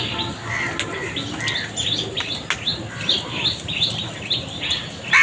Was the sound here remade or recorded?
recorded